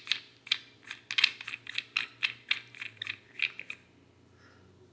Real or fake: real